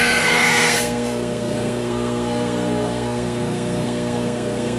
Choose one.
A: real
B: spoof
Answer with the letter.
B